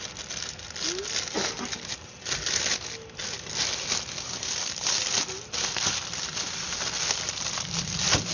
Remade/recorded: recorded